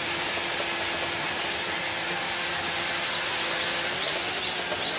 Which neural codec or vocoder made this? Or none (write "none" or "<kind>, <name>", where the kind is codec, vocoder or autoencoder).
none